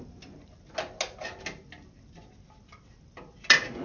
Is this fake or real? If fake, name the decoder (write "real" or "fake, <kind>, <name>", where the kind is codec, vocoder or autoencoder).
real